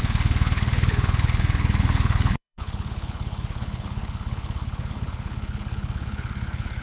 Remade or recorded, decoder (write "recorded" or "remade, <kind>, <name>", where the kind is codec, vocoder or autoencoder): remade, codec, HILCodec